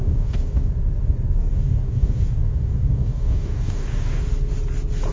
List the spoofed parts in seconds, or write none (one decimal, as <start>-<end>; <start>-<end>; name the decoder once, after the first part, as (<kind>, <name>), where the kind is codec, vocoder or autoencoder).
0.0-0.7 (codec, DAC); 1.4-4.2